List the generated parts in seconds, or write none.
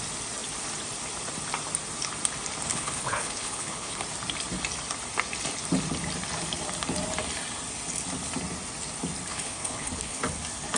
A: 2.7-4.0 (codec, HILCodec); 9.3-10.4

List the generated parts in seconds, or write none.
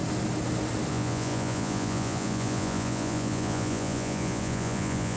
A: 0.9-5.2 (vocoder, Vocos)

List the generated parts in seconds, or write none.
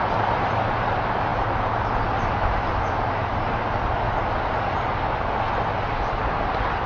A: none